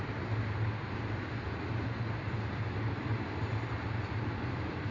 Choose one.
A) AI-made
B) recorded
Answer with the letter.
A